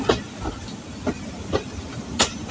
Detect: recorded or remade recorded